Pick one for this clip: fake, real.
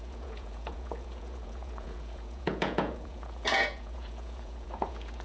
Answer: fake